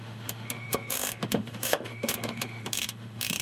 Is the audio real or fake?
fake